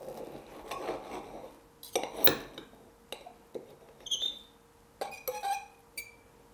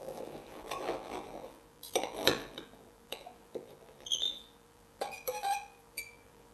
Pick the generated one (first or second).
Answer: second